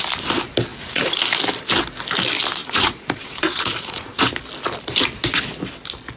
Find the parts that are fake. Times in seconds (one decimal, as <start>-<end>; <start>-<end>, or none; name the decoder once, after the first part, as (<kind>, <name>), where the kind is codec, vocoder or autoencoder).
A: 0.7-1.2 (vocoder, Vocos); 2.6-4.2